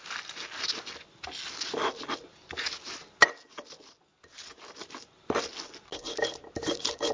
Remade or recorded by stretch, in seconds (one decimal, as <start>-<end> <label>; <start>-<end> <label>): 0.0-7.1 recorded